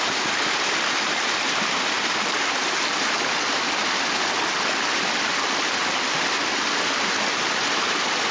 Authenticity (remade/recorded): recorded